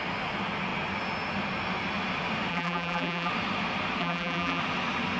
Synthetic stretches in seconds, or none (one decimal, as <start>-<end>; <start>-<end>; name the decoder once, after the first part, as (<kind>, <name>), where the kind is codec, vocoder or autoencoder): 2.5-3.3 (vocoder, BigVGAN v2); 4.0-4.6